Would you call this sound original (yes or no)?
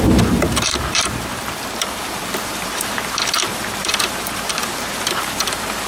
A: no